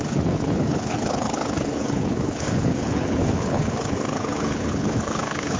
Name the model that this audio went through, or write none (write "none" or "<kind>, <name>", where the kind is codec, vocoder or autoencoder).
codec, HILCodec